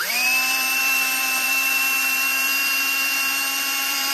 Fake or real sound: fake